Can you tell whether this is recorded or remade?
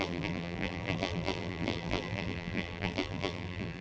remade